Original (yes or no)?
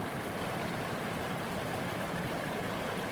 no